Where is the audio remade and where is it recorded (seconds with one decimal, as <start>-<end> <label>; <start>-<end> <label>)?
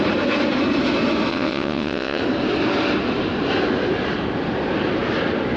0.0-1.3 recorded; 1.3-2.2 remade; 2.2-5.6 recorded